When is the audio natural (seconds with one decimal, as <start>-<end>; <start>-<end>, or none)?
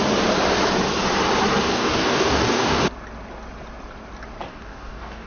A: 0.0-1.7; 2.8-4.5